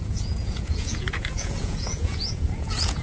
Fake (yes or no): yes